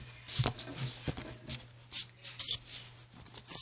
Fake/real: real